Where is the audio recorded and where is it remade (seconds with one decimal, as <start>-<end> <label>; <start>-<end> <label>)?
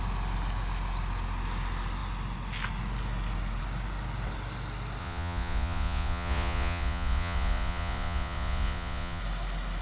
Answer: 0.0-5.0 recorded; 5.0-9.2 remade; 9.2-9.8 recorded